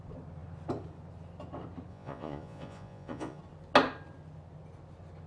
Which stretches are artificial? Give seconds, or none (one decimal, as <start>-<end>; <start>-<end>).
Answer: 1.9-3.4